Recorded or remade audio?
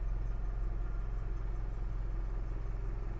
recorded